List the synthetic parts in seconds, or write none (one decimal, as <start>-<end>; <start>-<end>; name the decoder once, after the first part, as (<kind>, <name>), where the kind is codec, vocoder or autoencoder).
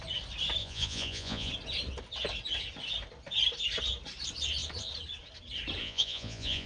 0.6-1.5 (vocoder, Vocos); 5.8-6.7